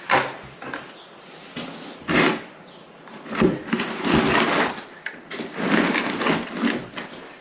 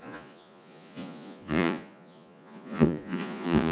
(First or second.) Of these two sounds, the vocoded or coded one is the second